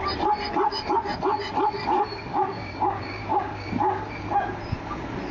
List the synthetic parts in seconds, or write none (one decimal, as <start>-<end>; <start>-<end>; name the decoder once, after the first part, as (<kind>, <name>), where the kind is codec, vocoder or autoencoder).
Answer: 2.3-3.7 (codec, DAC)